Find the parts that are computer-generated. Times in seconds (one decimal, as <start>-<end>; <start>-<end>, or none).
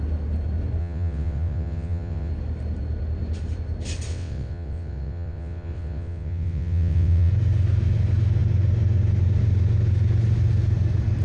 0.8-2.3; 4.1-7.3